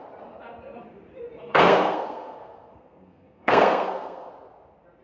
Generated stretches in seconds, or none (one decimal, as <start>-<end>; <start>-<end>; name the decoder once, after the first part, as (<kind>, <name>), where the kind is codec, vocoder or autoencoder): 1.4-4.3 (codec, SNAC)